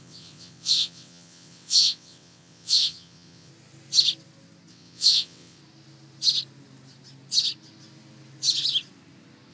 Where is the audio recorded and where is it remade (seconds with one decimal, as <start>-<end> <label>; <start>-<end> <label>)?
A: 0.0-3.5 remade; 3.5-4.7 recorded; 4.7-5.6 remade; 5.6-9.5 recorded